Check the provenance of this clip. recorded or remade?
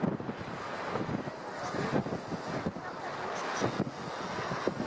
recorded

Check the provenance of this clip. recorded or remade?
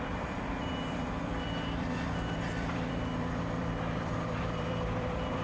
remade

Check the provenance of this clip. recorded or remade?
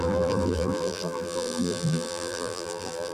remade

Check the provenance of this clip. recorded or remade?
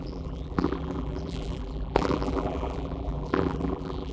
remade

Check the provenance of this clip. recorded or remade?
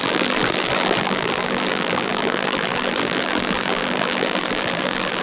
remade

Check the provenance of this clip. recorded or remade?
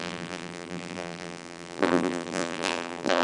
remade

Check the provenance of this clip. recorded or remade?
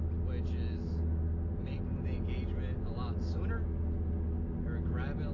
recorded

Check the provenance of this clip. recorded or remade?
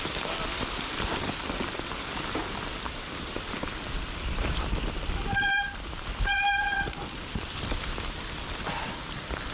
remade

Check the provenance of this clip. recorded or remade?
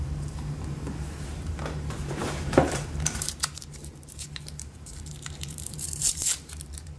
remade